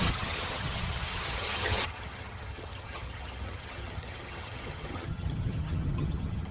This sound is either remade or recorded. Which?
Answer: remade